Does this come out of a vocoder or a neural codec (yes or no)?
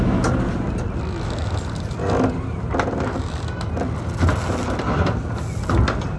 no